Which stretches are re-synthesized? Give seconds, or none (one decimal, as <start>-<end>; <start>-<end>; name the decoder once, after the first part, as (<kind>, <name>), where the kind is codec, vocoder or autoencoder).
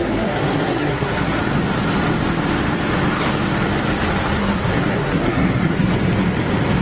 0.0-1.4 (codec, SNAC); 4.4-5.9